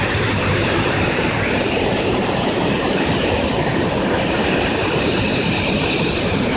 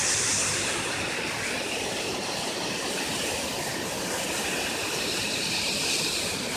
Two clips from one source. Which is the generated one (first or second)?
first